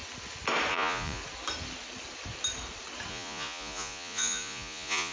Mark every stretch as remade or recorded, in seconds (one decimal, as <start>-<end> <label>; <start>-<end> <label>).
0.0-0.7 recorded; 0.7-1.2 remade; 1.2-3.1 recorded; 3.1-5.1 remade